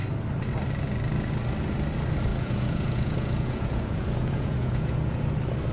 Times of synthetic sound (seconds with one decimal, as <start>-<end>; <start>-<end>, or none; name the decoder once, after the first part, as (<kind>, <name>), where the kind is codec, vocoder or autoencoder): 2.3-5.2 (vocoder, Vocos)